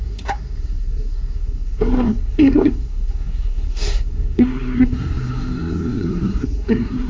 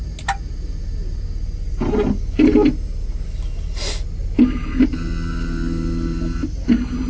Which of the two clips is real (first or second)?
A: second